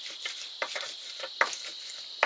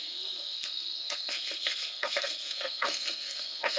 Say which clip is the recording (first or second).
first